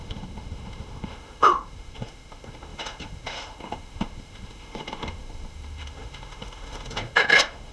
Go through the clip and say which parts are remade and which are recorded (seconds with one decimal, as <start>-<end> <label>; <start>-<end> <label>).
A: 0.0-7.7 remade